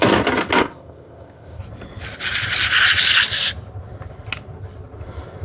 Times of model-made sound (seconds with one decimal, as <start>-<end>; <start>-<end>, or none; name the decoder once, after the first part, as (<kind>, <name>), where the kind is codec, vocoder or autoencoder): 0.6-1.6 (codec, ZipCodec)